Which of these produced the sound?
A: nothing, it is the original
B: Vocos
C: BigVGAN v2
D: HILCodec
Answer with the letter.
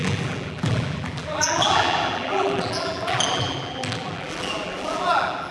C